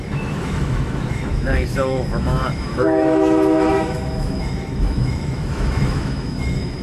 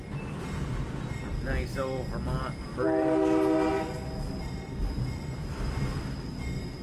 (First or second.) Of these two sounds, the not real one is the first